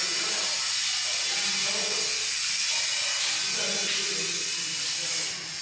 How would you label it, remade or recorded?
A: recorded